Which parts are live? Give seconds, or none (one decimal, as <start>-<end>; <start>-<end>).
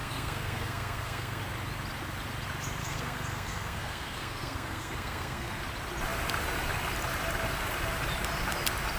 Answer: 1.4-2.8; 5.6-9.0